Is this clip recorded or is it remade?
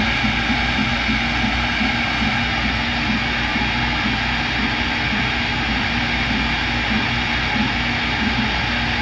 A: recorded